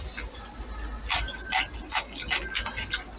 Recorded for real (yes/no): yes